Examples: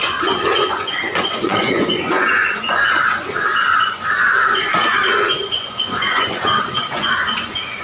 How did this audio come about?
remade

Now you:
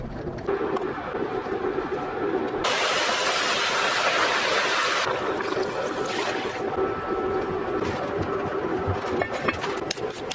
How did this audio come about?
recorded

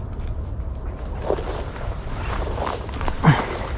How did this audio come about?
recorded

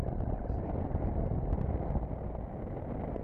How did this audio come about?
recorded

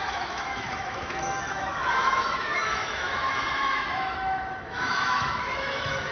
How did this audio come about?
remade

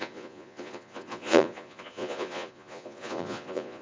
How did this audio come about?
remade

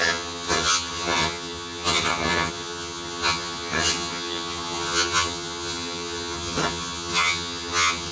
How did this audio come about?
remade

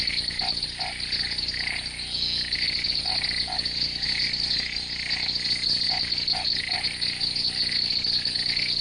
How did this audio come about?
recorded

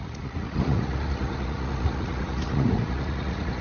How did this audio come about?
remade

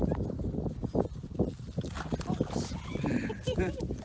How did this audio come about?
recorded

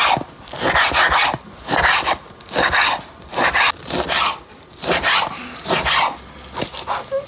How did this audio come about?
recorded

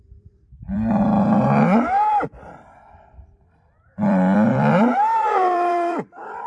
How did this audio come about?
remade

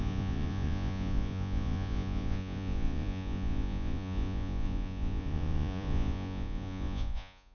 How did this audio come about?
remade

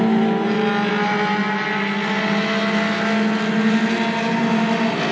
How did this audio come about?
recorded